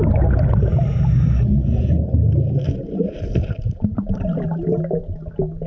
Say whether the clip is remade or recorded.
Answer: recorded